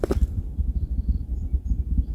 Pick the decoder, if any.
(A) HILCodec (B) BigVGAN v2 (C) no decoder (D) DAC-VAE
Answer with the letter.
B